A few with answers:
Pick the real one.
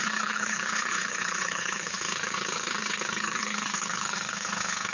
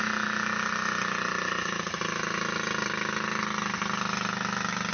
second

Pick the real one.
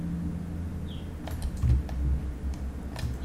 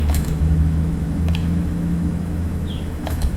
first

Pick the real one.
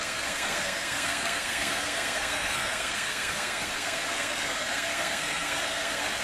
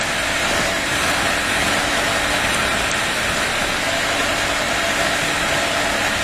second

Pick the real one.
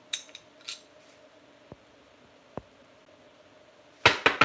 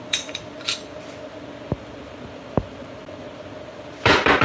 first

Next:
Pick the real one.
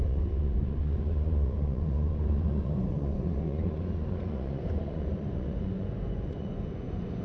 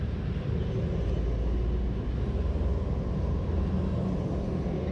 second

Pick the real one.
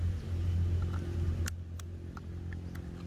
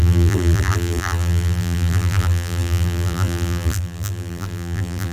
first